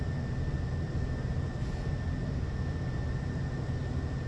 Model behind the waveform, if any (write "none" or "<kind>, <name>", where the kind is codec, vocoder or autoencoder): none